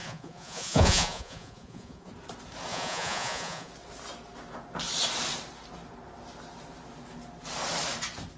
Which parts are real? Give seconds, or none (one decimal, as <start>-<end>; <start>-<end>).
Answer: 2.1-2.7; 3.7-8.4